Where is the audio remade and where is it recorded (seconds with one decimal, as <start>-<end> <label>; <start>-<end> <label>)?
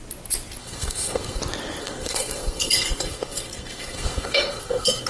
0.0-0.6 recorded; 0.6-1.4 remade; 1.4-1.8 recorded; 1.8-5.1 remade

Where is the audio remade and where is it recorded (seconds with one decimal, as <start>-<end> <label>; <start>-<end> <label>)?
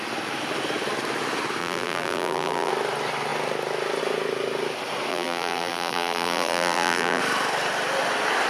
0.0-1.6 recorded; 1.6-2.7 remade; 2.7-5.1 recorded; 5.1-7.2 remade; 7.2-8.5 recorded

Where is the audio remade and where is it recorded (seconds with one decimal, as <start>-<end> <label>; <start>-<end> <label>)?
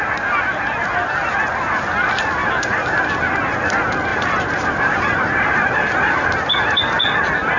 0.0-2.4 recorded; 2.4-3.3 remade; 3.3-4.1 recorded; 4.1-6.8 remade; 6.8-7.6 recorded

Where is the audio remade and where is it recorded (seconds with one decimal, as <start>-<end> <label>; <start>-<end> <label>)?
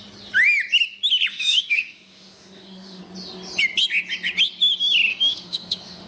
0.0-1.3 recorded; 1.3-3.0 remade; 3.0-5.1 recorded; 5.1-6.1 remade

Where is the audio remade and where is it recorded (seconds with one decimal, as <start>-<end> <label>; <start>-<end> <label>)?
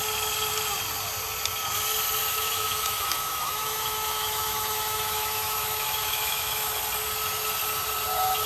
0.0-2.2 recorded; 2.2-6.8 remade; 6.8-8.5 recorded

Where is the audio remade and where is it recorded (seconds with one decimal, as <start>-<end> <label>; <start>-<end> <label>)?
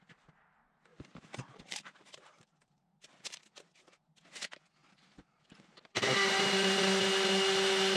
0.0-0.9 recorded; 0.9-3.4 remade; 3.4-4.8 recorded; 4.8-6.8 remade; 6.8-8.0 recorded